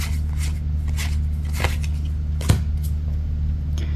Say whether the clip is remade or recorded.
recorded